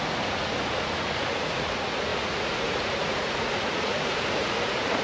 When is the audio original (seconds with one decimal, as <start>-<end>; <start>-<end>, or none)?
none